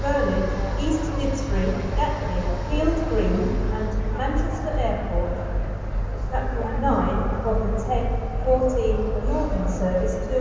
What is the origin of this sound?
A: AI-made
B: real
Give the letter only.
B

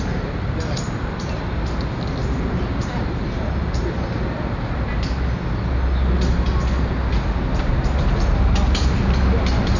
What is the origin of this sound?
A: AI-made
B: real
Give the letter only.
B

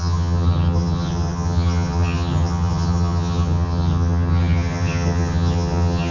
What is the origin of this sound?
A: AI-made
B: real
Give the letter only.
A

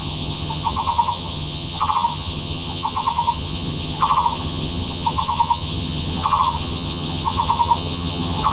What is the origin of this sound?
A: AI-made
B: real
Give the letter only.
A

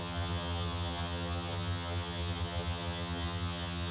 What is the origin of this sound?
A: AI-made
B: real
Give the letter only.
A